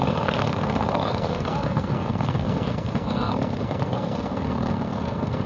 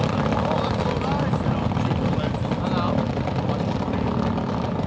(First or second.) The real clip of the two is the second